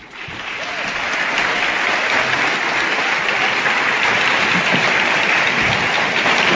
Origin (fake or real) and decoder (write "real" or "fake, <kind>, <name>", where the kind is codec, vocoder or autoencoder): real